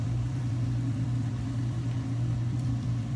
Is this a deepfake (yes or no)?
yes